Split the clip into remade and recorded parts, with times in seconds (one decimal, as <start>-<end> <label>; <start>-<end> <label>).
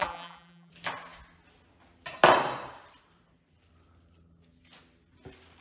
0.0-0.7 remade; 0.7-5.6 recorded